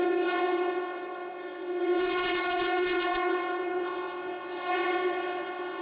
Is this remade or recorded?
remade